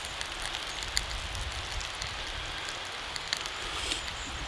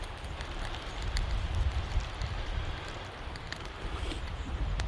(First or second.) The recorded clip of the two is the first